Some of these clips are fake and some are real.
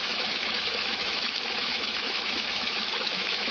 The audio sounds fake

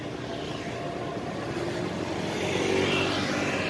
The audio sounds real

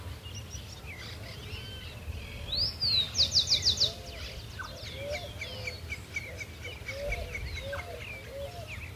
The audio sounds real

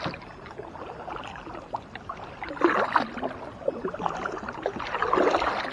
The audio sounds real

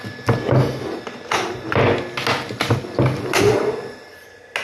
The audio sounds real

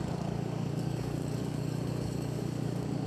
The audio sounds fake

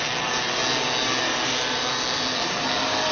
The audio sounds real